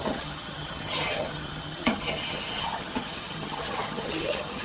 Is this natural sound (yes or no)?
no